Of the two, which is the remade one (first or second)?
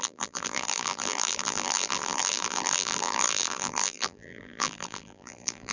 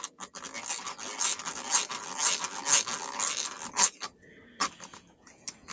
first